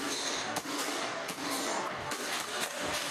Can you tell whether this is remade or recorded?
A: remade